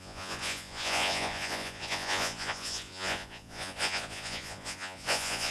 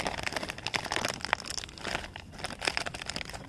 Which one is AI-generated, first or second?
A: first